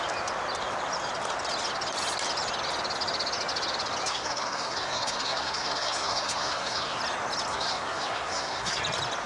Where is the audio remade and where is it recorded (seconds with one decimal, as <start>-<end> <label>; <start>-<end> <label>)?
0.0-4.1 recorded; 4.1-7.0 remade; 7.0-7.5 recorded; 7.5-8.8 remade; 8.8-9.3 recorded